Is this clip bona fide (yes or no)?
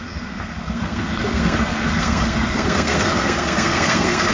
no